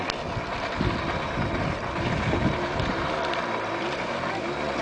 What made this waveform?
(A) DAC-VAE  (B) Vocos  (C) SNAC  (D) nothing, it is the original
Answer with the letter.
D